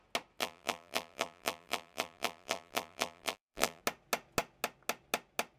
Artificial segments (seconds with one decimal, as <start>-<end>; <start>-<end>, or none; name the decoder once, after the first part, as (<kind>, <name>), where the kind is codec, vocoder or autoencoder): 0.4-3.8 (vocoder, BigVGAN v2)